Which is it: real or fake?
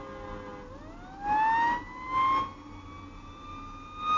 real